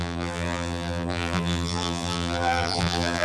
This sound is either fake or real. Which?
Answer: fake